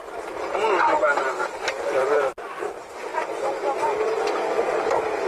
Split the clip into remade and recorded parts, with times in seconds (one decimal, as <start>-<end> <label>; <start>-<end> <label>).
0.0-5.3 recorded